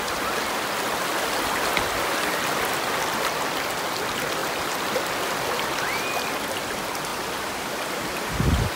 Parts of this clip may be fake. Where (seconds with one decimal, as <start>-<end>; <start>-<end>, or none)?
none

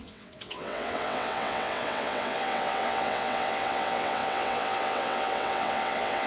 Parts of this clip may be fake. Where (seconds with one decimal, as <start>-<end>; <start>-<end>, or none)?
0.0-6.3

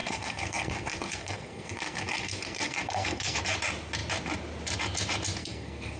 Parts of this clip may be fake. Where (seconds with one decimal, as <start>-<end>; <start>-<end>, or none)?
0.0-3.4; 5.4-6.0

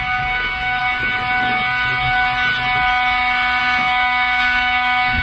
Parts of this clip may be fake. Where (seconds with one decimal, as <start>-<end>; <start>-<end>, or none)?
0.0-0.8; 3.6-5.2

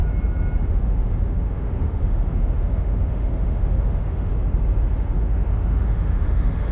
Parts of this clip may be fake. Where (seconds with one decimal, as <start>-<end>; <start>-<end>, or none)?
0.7-4.3; 4.9-6.7

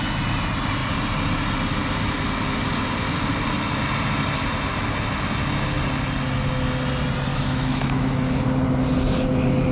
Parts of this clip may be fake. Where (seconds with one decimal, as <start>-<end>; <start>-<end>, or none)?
7.3-8.4

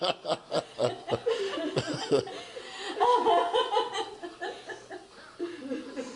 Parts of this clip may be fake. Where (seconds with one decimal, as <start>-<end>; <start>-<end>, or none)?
none